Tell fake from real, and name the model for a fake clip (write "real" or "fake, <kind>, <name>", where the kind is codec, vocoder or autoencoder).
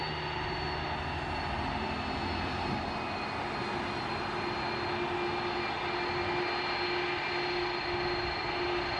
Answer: real